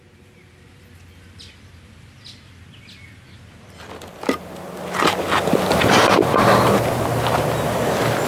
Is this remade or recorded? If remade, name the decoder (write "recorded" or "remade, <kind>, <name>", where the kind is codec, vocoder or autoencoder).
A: recorded